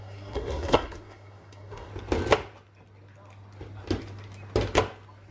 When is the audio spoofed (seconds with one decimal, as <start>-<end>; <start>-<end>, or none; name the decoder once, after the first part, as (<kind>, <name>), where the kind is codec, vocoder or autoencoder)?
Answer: 0.0-1.9 (codec, SNAC)

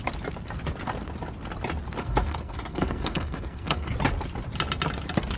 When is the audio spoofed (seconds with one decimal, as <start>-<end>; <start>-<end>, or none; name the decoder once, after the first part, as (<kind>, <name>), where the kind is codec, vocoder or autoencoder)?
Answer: 2.0-3.9 (codec, SNAC)

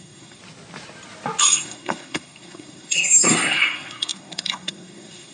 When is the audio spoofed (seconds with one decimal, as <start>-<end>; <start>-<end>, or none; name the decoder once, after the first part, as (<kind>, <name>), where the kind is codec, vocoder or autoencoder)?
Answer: 0.0-0.4 (codec, SNAC); 1.4-5.3

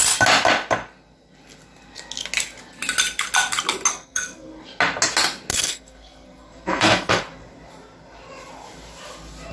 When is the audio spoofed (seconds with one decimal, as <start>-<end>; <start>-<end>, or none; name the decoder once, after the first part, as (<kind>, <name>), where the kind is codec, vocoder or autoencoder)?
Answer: 3.9-4.6 (codec, SNAC); 5.5-7.2

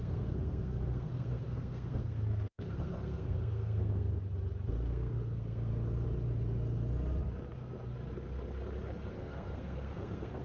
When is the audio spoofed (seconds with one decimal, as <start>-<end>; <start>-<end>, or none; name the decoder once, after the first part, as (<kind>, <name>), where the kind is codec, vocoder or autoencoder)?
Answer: 0.0-4.1 (codec, SNAC); 4.7-5.7; 9.1-10.4

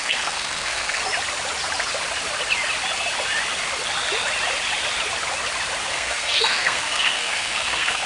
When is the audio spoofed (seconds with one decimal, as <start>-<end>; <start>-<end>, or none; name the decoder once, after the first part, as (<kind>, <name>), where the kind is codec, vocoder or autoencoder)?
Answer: 0.0-1.0 (codec, SNAC); 5.9-8.1

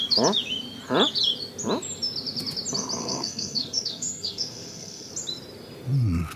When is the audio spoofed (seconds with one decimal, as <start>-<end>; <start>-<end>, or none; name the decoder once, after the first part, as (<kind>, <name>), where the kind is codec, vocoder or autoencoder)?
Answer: 3.0-5.1 (codec, SNAC)